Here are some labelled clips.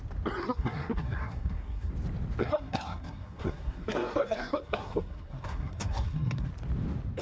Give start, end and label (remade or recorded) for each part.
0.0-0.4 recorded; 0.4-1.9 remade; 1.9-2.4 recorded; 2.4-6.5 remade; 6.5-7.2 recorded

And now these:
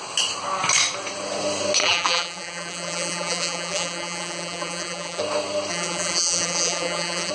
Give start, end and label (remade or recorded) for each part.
0.0-1.8 recorded; 1.8-5.2 remade; 5.2-5.7 recorded; 5.7-7.3 remade

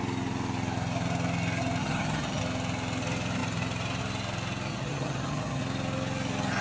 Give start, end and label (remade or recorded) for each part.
0.0-1.8 recorded; 1.8-2.4 remade; 2.4-4.7 recorded; 4.7-5.6 remade; 5.6-6.6 recorded

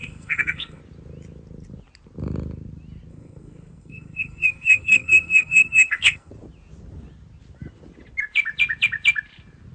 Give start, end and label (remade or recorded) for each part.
0.0-0.8 remade; 0.8-3.1 recorded; 3.1-6.3 remade; 6.3-9.7 recorded

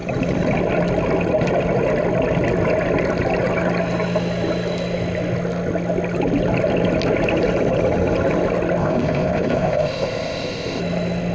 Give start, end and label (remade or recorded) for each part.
0.0-8.8 recorded; 8.8-10.8 remade; 10.8-11.3 recorded

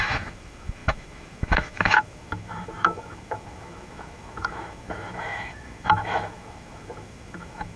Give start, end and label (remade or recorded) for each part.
0.0-7.8 remade

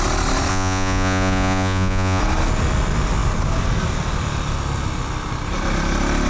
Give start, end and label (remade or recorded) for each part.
0.0-0.5 recorded; 0.5-2.2 remade; 2.2-6.3 recorded